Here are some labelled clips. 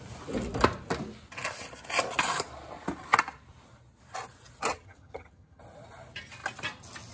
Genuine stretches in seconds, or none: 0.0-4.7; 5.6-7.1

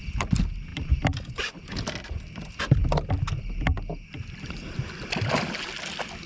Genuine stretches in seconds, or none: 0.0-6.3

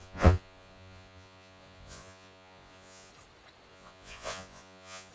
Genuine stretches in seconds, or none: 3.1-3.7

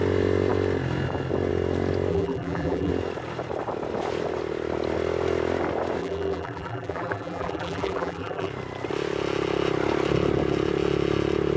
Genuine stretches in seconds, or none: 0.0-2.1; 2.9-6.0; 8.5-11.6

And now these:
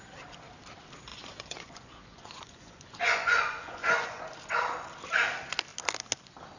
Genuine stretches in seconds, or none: 0.0-1.1; 4.2-6.6

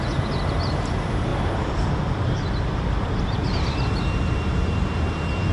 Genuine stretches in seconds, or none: 1.3-3.2

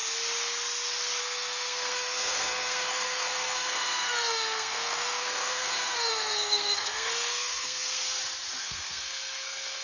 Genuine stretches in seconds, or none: 0.0-1.2; 8.0-8.6